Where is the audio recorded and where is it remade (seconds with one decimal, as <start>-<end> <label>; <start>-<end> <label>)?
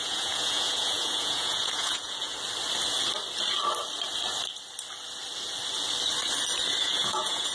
0.0-2.3 remade; 2.3-6.8 recorded; 6.8-7.5 remade